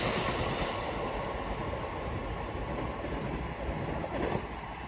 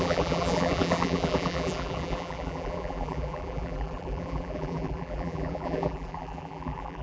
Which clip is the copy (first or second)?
second